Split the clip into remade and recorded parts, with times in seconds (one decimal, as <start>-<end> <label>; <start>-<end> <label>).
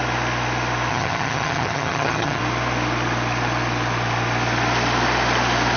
0.0-0.9 recorded; 0.9-2.4 remade; 2.4-5.8 recorded